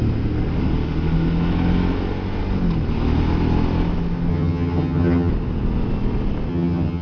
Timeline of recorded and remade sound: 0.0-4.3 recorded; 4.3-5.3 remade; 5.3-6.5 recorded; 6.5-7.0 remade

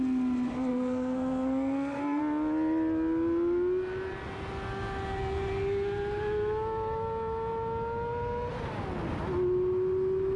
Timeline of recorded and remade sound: 0.0-0.7 recorded; 0.7-2.2 remade; 2.2-10.4 recorded

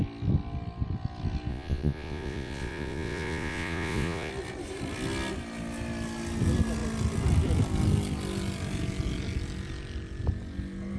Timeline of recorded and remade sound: 0.0-1.5 recorded; 1.5-4.3 remade; 4.3-11.0 recorded